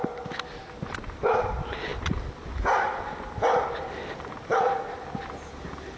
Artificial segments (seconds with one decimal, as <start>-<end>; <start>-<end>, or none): none